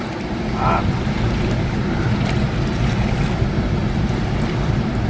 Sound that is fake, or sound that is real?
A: real